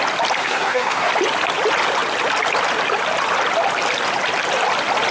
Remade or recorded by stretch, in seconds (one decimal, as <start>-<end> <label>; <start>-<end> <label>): 0.0-0.4 recorded; 0.4-1.1 remade; 1.1-5.1 recorded